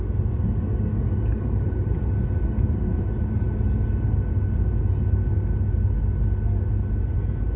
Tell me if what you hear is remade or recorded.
recorded